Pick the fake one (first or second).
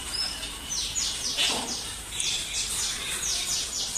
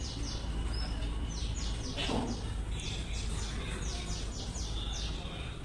first